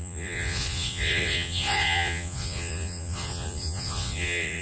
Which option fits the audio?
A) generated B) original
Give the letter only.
A